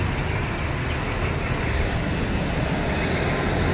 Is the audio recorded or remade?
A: recorded